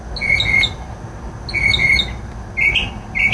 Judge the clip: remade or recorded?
recorded